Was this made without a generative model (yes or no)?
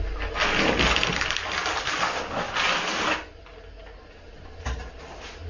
yes